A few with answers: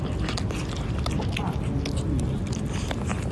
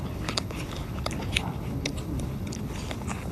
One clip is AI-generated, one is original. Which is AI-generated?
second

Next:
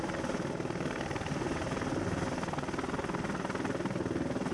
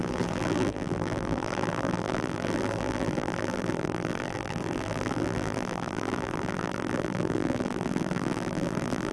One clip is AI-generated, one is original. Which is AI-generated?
second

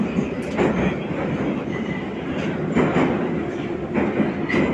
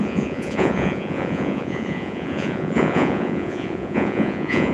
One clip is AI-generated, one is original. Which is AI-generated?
second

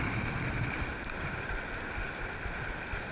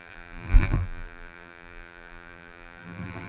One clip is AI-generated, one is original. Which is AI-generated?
second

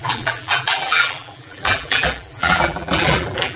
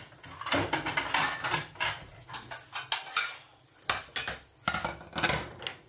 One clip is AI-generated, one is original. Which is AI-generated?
first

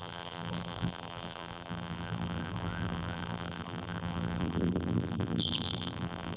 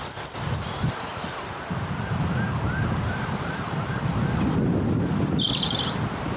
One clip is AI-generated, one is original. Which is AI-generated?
first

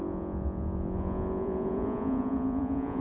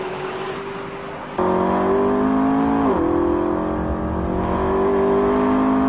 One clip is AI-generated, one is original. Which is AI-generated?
first